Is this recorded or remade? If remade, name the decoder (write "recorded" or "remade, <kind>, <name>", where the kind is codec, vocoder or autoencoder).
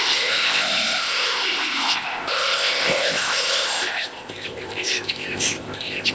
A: remade, codec, ZipCodec